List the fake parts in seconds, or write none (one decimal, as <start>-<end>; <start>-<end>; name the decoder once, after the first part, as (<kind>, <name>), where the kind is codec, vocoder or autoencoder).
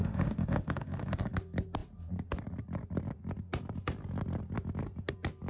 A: 0.0-1.2 (autoencoder, DAC-VAE)